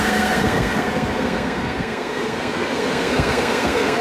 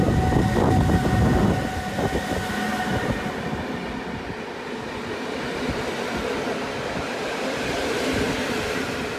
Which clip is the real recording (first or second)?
second